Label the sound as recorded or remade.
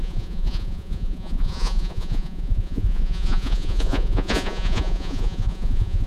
remade